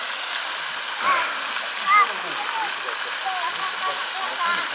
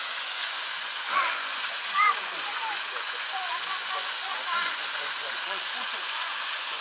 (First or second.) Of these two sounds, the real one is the first